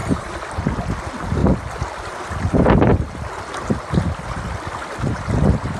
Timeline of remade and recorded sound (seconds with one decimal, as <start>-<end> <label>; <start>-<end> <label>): 0.0-0.6 remade; 0.6-5.8 recorded